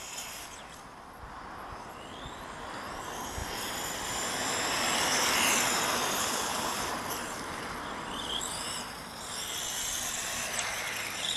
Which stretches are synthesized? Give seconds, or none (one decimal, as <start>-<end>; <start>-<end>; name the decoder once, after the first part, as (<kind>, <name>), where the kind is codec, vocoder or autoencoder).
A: 6.2-6.9 (codec, HILCodec)